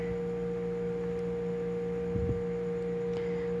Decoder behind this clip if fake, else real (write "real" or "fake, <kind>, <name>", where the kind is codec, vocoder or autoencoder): real